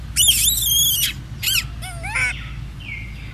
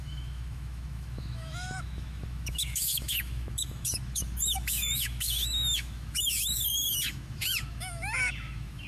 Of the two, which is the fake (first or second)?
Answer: second